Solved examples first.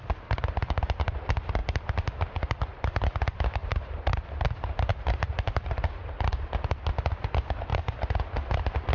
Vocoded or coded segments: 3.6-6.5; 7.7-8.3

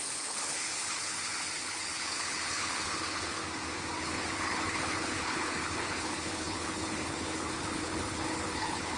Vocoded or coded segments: 0.0-3.4; 4.0-9.0